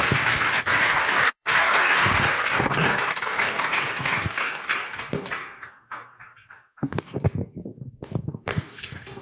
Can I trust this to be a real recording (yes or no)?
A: no